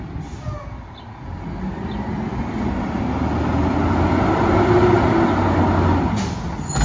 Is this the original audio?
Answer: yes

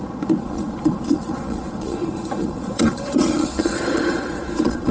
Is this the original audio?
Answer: no